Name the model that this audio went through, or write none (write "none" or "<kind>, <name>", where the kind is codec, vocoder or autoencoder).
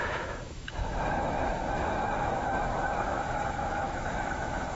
autoencoder, DAC-VAE